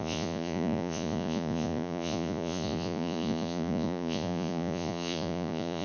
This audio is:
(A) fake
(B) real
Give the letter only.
A